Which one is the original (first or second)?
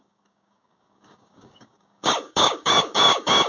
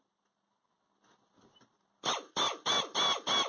second